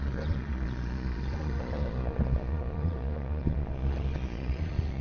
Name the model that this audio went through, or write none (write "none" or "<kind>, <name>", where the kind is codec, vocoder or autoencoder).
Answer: vocoder, Vocos